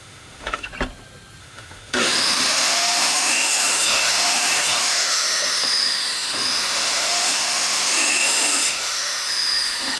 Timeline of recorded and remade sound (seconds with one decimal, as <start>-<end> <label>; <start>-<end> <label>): 0.0-0.7 remade; 0.7-1.4 recorded; 1.4-10.0 remade